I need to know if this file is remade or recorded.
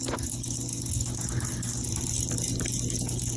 recorded